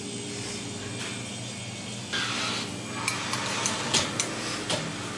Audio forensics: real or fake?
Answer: real